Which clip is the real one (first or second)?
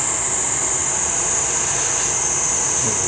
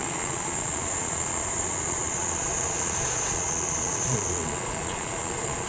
first